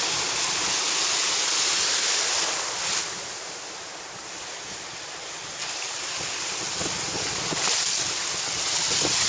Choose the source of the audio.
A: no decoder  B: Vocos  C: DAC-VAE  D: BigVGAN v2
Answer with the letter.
A